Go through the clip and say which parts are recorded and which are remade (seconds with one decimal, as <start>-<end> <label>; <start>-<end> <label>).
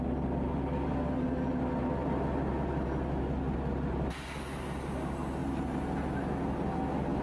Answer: 0.0-7.2 recorded